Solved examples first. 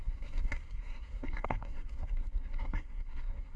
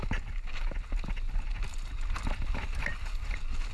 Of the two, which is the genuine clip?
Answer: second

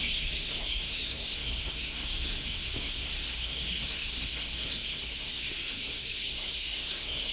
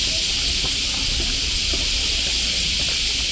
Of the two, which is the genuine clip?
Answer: second